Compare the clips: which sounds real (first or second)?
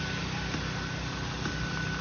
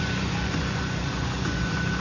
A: first